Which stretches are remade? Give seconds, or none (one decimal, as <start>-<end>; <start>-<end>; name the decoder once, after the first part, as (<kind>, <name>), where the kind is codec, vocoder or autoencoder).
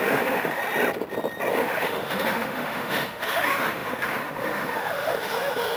0.0-0.6 (autoencoder, DAC-VAE); 1.5-5.8